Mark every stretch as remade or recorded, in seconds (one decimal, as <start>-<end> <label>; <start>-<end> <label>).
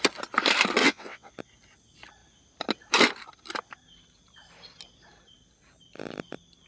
0.0-0.8 recorded; 0.8-1.3 remade; 1.3-6.7 recorded